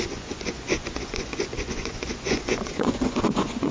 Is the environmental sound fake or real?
fake